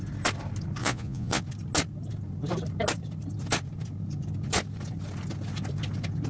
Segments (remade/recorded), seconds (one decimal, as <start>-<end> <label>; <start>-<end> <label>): 0.0-0.8 recorded; 0.8-1.4 remade; 1.4-6.3 recorded